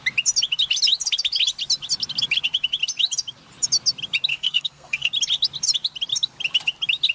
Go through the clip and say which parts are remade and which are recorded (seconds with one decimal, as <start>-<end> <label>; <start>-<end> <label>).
0.0-4.3 recorded; 4.3-5.1 remade; 5.1-7.1 recorded